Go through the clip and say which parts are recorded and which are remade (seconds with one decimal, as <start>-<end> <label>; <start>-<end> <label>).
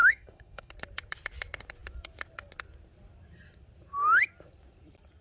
0.0-0.7 remade; 0.7-5.2 recorded